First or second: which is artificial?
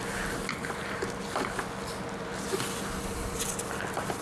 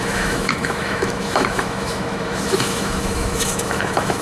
second